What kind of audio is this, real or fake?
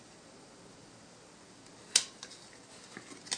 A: real